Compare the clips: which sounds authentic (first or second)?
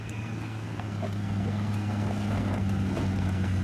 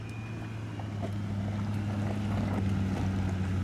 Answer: second